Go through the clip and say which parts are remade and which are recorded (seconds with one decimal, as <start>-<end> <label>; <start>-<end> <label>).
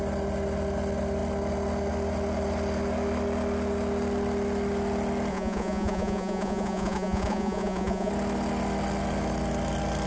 0.0-5.3 recorded; 5.3-8.1 remade; 8.1-10.1 recorded